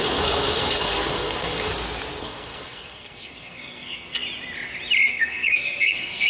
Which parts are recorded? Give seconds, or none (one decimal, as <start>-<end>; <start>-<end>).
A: 1.7-2.2; 4.2-5.1